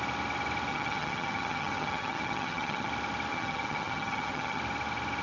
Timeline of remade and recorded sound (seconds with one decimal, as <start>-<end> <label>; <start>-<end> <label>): 0.0-0.7 recorded; 0.7-2.9 remade; 2.9-3.3 recorded; 3.3-4.6 remade; 4.6-5.2 recorded